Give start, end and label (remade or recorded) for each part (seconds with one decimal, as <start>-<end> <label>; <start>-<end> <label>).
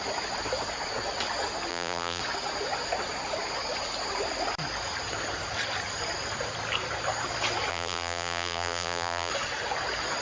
0.0-1.7 recorded; 1.7-2.2 remade; 2.2-7.7 recorded; 7.7-9.3 remade; 9.3-10.2 recorded